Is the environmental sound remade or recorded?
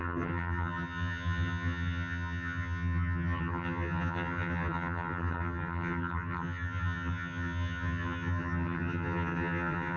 remade